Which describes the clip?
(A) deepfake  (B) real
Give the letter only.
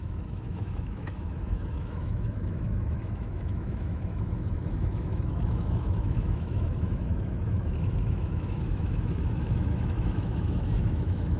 A